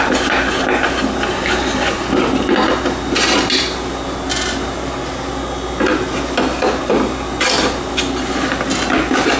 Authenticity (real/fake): real